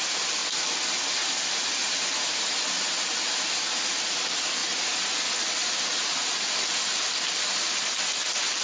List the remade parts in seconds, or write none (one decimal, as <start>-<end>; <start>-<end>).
none